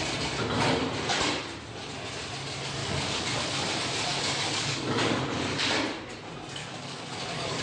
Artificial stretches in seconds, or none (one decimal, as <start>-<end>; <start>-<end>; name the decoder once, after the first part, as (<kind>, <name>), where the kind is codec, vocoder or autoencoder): 2.8-3.4 (codec, DAC); 4.1-5.2; 6.6-7.6